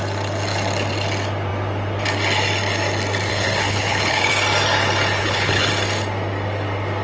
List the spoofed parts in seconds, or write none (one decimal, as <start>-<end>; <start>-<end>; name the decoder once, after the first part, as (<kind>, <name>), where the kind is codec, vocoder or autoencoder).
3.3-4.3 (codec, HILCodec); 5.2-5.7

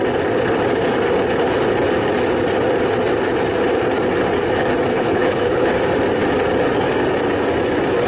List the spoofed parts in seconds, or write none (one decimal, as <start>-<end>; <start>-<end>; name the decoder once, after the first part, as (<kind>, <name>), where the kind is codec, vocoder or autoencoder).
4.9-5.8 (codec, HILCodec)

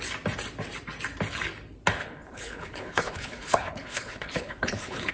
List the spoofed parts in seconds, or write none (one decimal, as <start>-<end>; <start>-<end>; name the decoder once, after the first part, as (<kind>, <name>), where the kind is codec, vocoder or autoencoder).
2.0-5.1 (codec, HILCodec)

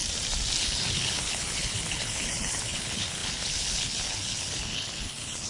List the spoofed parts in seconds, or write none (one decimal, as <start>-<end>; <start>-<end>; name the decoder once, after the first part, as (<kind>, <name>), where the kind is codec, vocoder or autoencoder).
0.6-5.5 (codec, HILCodec)

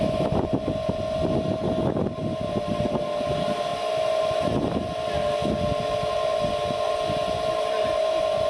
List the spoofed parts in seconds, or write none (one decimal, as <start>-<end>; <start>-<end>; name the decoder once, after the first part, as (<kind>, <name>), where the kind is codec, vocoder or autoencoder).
none

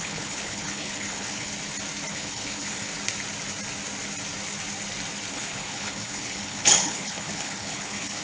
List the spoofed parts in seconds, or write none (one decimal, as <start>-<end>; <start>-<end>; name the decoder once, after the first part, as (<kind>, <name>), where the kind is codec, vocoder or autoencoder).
0.0-1.5 (codec, HILCodec); 2.1-2.9; 5.3-8.2